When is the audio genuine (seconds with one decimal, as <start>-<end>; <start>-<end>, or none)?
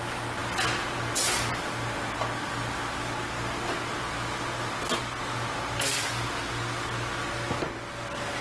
0.0-8.4